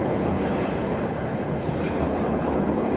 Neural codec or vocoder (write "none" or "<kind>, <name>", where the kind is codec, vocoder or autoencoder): codec, HILCodec